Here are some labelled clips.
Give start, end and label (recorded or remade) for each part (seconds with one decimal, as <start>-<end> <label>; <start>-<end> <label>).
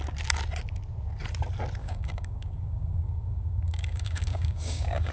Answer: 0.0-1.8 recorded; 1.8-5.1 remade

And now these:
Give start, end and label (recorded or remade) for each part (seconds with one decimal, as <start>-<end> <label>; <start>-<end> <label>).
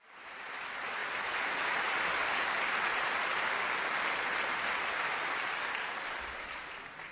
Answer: 0.0-7.1 recorded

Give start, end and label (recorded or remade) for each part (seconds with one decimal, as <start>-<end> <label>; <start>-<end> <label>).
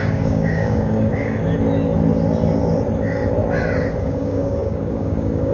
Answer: 0.0-1.4 remade; 1.4-4.0 recorded; 4.0-5.5 remade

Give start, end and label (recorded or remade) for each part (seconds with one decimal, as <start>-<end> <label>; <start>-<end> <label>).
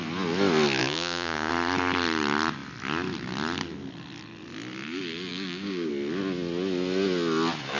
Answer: 0.0-0.8 recorded; 0.8-1.5 remade; 1.5-5.3 recorded; 5.3-5.9 remade; 5.9-7.8 recorded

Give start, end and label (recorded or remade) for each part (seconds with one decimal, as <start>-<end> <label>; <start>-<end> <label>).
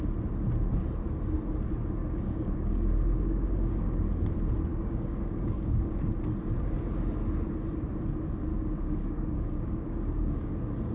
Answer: 0.0-2.0 recorded; 2.0-4.0 remade; 4.0-4.7 recorded; 4.7-6.0 remade; 6.0-8.5 recorded; 8.5-10.5 remade; 10.5-10.9 recorded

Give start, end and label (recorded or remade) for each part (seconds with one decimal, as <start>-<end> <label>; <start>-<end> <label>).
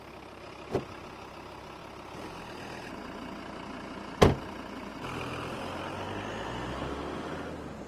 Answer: 0.0-7.9 recorded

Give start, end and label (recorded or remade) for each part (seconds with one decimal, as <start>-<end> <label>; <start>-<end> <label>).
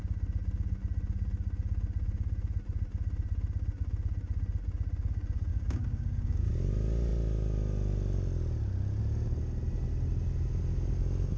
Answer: 0.0-5.5 recorded; 5.5-6.5 remade; 6.5-11.4 recorded